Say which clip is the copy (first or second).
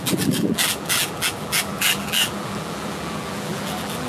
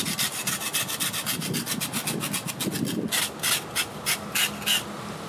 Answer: first